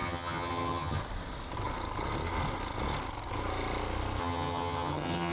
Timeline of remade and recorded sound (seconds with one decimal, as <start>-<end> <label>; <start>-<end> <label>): 0.0-1.0 remade; 1.0-4.2 recorded; 4.2-5.3 remade